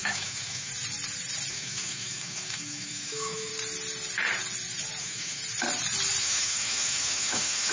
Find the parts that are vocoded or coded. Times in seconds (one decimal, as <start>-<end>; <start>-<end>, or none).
0.0-0.7; 1.5-3.5; 5.0-5.4; 6.2-7.7